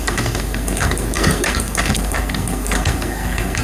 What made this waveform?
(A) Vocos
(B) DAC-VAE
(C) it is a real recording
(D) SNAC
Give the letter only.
D